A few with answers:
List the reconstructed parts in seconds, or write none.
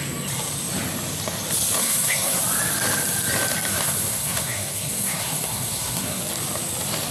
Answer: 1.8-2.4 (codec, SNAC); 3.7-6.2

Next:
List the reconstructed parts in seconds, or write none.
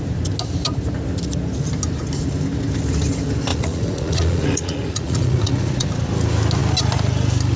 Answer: 3.5-5.9 (vocoder, Vocos)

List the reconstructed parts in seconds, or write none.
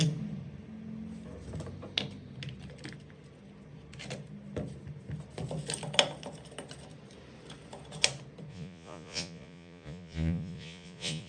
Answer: 8.5-11.3 (vocoder, Vocos)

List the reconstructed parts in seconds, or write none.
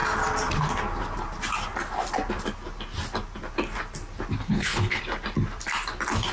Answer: 4.4-5.0 (codec, HILCodec)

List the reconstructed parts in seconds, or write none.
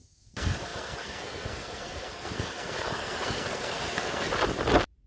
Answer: 0.0-4.3 (codec, SNAC)